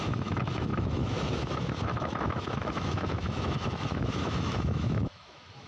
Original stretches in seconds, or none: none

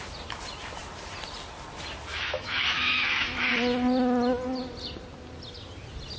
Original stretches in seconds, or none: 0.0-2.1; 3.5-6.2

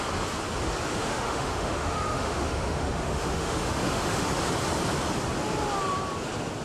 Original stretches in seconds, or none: 0.0-0.9; 4.3-6.6

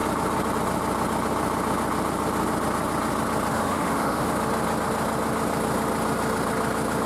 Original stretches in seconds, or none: 0.0-3.5; 4.3-7.1